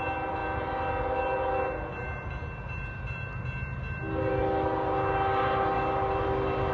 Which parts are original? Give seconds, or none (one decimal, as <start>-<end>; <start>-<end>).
0.0-5.3; 6.3-6.7